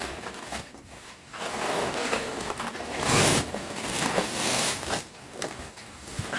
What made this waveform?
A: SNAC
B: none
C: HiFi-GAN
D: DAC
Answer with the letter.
D